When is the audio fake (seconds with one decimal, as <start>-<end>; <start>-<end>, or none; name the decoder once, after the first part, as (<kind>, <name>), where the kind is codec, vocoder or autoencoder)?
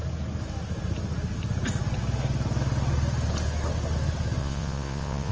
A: 4.4-5.3 (vocoder, Vocos)